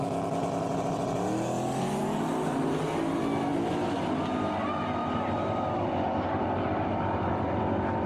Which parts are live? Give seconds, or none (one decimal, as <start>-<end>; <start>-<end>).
0.0-2.0; 2.7-5.0; 7.3-8.1